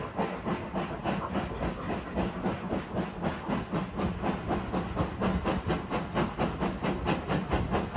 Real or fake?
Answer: real